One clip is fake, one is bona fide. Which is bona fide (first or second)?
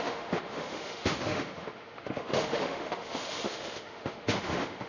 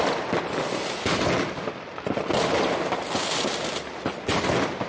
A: second